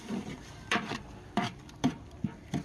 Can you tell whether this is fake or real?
fake